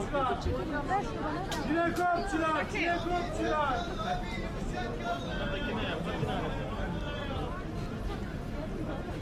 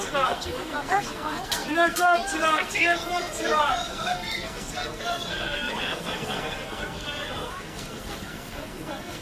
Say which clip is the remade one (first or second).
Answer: second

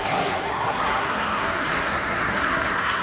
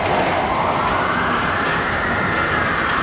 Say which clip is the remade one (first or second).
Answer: first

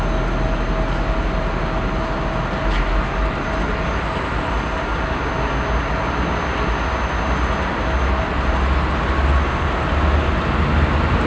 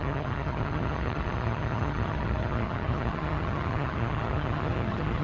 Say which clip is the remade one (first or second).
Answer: second